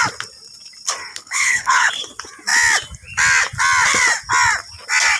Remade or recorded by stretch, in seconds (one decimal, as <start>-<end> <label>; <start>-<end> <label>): 0.0-1.1 recorded; 1.1-1.9 remade; 1.9-5.2 recorded